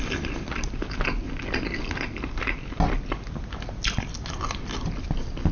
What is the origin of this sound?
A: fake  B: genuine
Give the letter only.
B